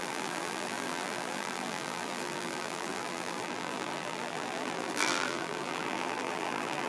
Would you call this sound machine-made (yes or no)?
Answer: yes